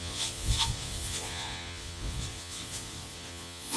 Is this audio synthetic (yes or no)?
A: yes